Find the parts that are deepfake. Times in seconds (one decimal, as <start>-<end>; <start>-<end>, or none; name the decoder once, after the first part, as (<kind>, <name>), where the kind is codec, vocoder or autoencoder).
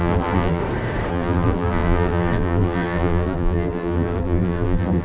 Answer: 0.0-0.6 (vocoder, BigVGAN v2); 1.1-5.0